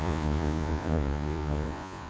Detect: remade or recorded remade